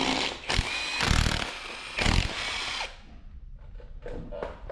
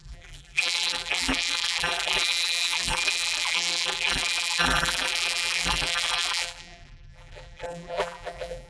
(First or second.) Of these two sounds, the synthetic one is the second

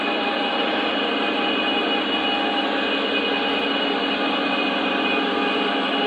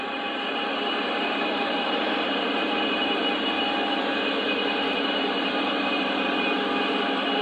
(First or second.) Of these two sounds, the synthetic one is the second